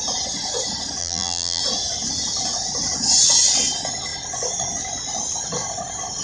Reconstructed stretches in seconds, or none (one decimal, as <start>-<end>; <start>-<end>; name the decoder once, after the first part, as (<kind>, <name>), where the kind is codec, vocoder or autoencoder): 1.0-1.6 (vocoder, BigVGAN v2)